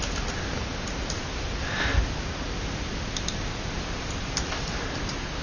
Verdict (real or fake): real